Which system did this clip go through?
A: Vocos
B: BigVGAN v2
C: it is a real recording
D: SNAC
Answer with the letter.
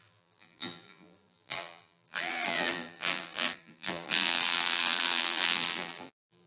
B